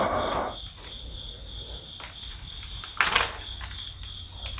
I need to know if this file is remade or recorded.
recorded